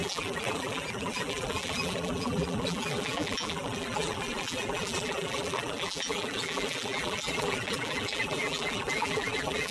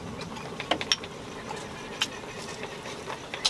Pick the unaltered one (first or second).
second